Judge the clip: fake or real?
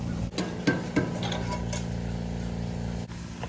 real